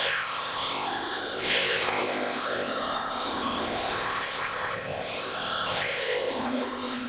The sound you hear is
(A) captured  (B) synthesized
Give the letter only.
B